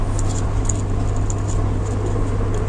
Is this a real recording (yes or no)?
yes